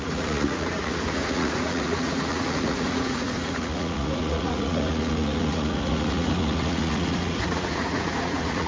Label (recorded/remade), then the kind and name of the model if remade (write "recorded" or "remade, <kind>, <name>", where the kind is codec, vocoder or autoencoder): remade, vocoder, Vocos